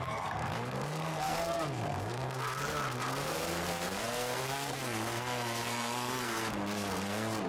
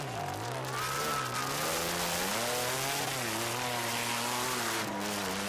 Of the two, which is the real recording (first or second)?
second